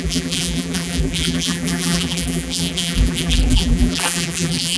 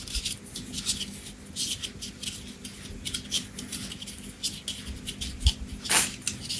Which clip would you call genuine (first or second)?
second